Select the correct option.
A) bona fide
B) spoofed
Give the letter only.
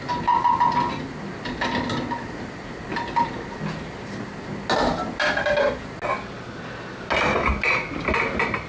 A